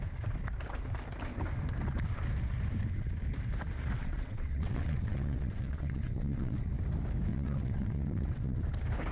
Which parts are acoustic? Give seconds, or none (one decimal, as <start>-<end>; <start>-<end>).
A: 0.0-4.0; 6.7-7.3; 8.6-9.1